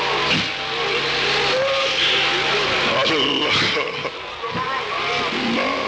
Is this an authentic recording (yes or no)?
yes